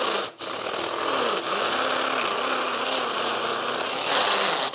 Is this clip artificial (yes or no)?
no